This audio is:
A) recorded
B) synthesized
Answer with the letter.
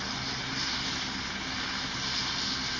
A